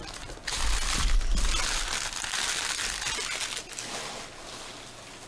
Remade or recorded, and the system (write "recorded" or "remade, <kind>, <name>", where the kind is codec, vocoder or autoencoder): recorded